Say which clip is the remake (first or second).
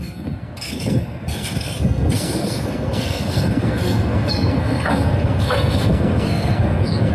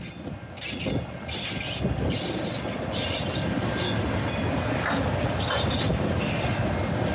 first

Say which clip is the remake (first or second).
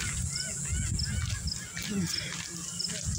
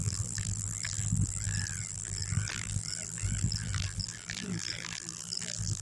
second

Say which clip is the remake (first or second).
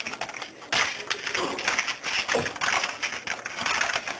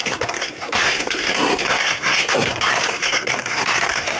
second